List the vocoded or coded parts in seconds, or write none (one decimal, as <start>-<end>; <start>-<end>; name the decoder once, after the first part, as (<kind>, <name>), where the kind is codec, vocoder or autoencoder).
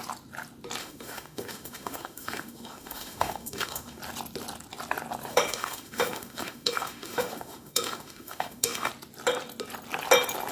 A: 0.8-4.0 (autoencoder, DAC-VAE); 5.3-8.9